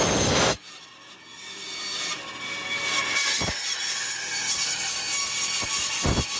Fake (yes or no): no